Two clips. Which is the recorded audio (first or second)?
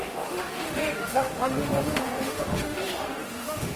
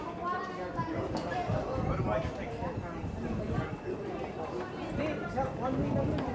second